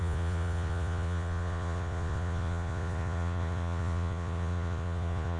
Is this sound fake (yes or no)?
yes